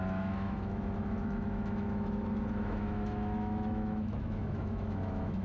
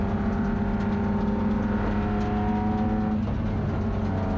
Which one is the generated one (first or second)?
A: first